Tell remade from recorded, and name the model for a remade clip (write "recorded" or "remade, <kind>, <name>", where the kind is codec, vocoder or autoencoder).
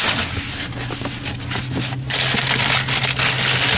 recorded